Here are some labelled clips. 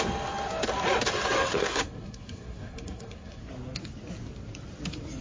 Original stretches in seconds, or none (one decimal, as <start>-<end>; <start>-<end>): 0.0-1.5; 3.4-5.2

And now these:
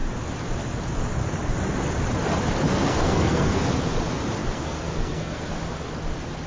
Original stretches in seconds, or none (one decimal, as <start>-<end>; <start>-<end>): 0.0-2.7; 3.7-4.4; 5.5-6.5

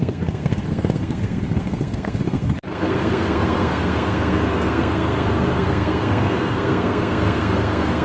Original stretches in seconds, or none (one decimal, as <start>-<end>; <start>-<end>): none

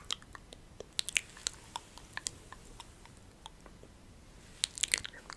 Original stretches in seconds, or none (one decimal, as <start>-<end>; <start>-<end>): 0.0-5.4